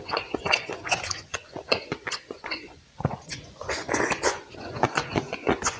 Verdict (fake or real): fake